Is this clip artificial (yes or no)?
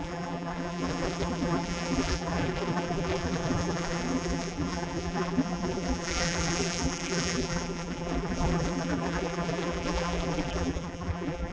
yes